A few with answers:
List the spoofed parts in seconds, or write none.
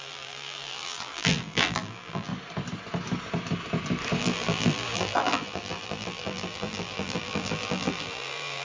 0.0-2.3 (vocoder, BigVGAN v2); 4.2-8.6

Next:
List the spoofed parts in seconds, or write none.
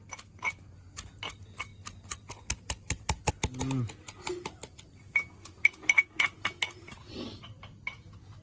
none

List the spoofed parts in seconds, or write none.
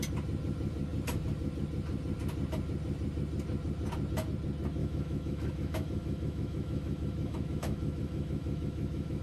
4.8-9.2 (autoencoder, DAC-VAE)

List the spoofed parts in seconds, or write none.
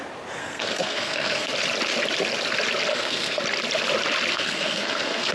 0.4-1.5 (codec, SNAC); 2.9-3.4; 4.3-5.3